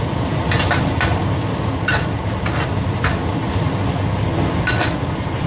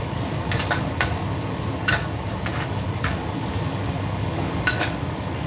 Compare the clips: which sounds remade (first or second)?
second